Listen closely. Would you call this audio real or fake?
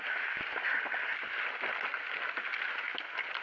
real